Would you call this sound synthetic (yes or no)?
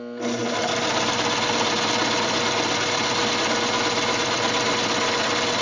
no